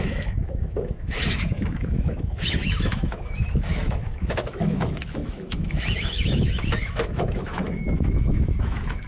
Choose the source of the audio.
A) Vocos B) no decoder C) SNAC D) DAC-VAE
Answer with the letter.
D